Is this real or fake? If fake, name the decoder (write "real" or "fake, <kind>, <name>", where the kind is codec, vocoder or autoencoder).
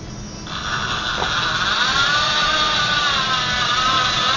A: real